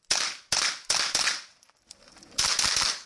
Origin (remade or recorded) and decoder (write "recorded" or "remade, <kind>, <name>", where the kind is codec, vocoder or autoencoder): recorded